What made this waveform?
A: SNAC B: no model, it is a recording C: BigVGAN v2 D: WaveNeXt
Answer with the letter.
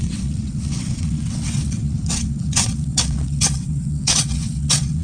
D